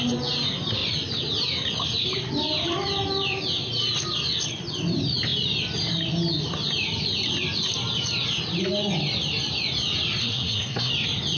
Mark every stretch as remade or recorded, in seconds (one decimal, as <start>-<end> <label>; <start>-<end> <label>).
0.0-10.2 recorded; 10.2-10.9 remade; 10.9-11.4 recorded